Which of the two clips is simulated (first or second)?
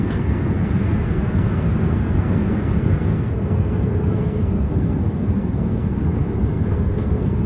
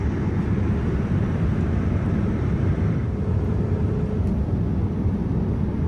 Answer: first